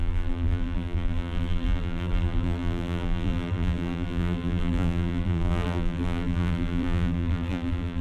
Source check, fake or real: fake